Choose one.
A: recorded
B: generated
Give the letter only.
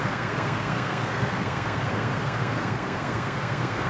B